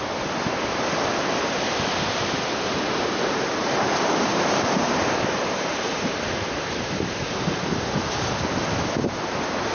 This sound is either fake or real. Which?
fake